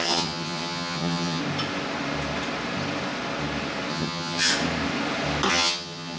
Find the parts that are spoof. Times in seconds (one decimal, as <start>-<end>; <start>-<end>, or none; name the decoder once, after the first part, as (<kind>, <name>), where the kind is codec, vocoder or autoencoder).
0.0-1.4 (vocoder, HiFi-GAN); 3.9-4.5; 5.5-6.2

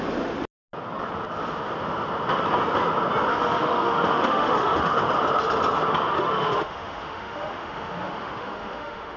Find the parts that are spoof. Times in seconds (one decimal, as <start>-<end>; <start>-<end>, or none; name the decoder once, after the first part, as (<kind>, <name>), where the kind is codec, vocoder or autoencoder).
3.3-5.0 (autoencoder, DAC-VAE); 6.1-9.2

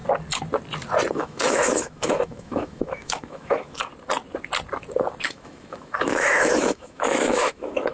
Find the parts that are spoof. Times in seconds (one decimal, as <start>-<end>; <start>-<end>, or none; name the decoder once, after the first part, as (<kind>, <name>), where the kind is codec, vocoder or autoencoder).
1.1-3.9 (autoencoder, DAC-VAE); 5.2-7.9

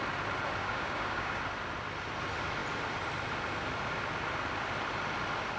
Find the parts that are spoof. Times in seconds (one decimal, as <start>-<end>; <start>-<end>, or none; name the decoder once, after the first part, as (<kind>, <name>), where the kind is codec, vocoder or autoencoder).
0.6-1.4 (codec, DAC)